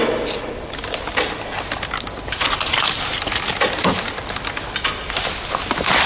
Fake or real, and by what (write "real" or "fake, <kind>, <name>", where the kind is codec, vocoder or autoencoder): real